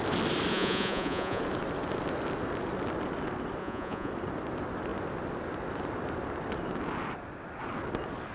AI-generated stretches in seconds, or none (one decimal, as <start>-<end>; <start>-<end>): 0.5-1.4; 3.6-4.1